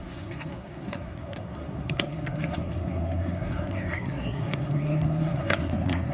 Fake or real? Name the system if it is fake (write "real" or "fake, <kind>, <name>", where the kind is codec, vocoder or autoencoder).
fake, codec, SNAC